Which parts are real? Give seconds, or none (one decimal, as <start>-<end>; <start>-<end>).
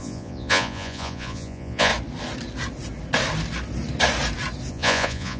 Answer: 1.9-4.7